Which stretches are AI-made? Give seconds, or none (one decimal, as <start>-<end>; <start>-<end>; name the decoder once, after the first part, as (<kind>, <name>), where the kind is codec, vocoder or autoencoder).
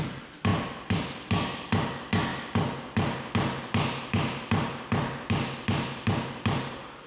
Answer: none